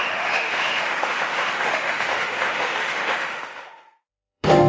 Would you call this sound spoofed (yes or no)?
yes